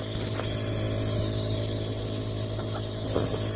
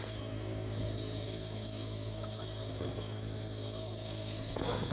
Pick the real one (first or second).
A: first